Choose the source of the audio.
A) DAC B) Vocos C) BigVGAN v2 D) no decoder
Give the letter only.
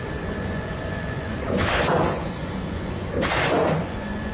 B